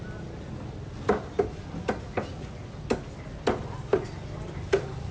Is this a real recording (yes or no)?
yes